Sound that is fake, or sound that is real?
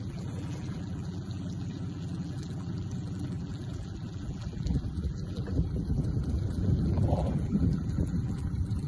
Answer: fake